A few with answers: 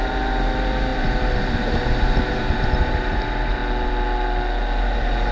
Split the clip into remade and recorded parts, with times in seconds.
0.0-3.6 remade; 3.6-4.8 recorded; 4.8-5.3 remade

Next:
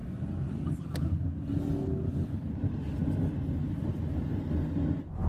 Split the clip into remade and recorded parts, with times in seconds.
0.0-5.3 recorded

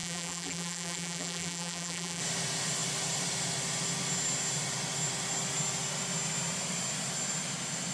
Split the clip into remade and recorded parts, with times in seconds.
0.0-2.2 remade; 2.2-7.9 recorded

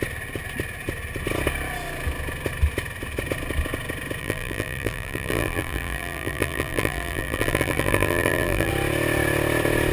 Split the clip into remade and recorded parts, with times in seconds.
0.0-4.2 recorded; 4.2-8.7 remade; 8.7-9.9 recorded

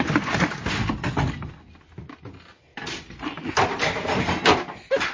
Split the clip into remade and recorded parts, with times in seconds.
0.0-5.1 recorded